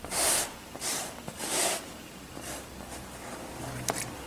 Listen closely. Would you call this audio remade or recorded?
recorded